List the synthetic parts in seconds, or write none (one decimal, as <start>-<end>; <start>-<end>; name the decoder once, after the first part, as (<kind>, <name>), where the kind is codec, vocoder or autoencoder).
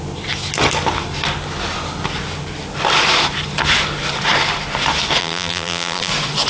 5.2-6.1 (vocoder, BigVGAN v2)